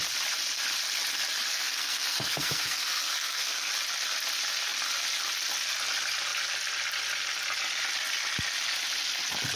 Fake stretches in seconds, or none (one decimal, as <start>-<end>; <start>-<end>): 1.5-3.7